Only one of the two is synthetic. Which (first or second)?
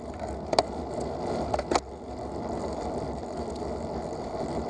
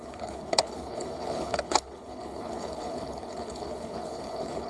second